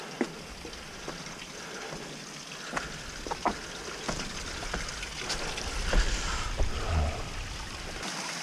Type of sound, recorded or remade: recorded